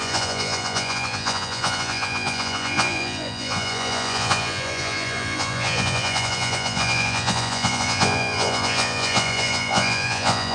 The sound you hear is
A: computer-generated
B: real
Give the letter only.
A